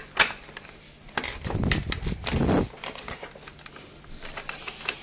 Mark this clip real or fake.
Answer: real